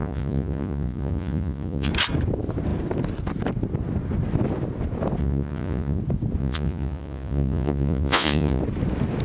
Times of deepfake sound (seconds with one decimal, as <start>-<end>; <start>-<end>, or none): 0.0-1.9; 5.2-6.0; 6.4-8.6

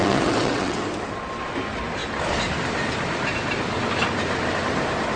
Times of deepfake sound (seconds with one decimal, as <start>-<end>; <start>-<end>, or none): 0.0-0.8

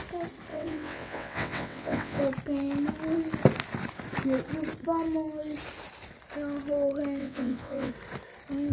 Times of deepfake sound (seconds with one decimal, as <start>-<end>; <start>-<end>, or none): 0.5-2.2; 7.2-7.9